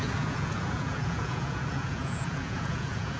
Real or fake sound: fake